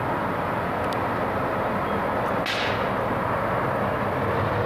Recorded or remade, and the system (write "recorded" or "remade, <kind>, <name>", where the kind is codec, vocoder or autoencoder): recorded